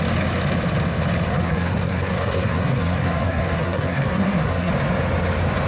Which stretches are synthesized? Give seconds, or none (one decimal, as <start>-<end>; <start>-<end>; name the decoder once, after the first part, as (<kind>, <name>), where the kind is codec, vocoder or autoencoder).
1.3-4.7 (codec, SNAC)